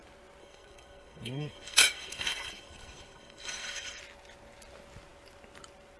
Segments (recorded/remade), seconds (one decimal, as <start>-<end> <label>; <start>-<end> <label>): 0.0-0.4 recorded; 0.4-4.0 remade; 4.0-6.0 recorded